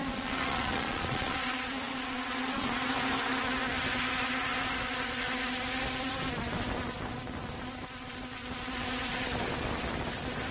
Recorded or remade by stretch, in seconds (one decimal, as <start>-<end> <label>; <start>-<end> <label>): 0.0-2.9 remade; 2.9-10.5 recorded